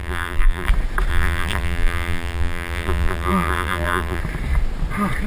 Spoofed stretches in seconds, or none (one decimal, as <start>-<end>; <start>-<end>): 0.0-0.7; 1.1-4.2